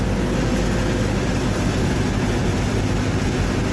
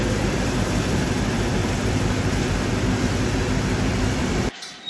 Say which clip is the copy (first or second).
second